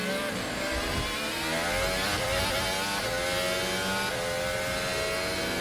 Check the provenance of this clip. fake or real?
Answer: real